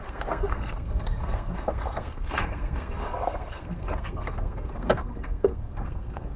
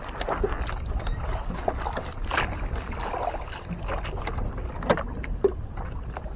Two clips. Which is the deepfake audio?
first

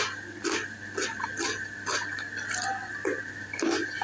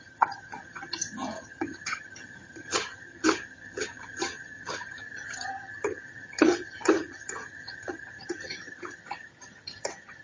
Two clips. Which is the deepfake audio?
second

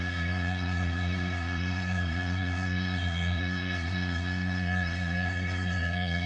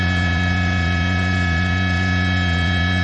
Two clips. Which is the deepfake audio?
first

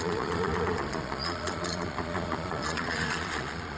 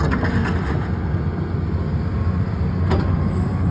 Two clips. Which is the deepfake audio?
first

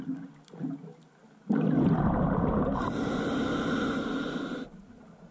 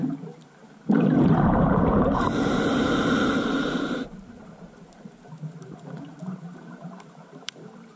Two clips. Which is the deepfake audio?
second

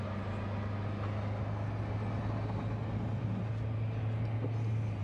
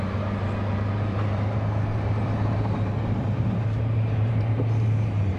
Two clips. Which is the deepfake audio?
second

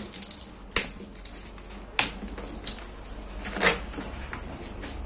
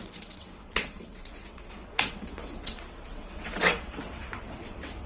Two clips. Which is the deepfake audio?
second